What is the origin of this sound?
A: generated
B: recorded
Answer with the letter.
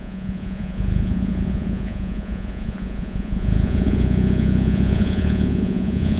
A